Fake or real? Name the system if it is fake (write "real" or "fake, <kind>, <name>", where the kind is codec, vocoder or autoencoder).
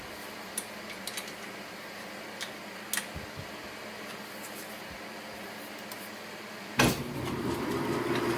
real